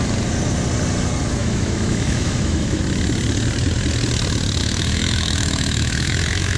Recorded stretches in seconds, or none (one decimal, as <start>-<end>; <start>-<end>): 0.0-1.4; 2.8-4.6